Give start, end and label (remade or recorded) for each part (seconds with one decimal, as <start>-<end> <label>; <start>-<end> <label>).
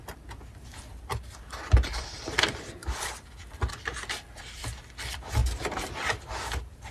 0.0-2.8 recorded; 2.8-3.7 remade; 3.7-6.9 recorded